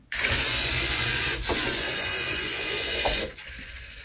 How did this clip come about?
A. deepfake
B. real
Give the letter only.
A